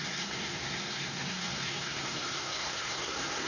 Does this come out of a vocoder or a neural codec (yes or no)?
yes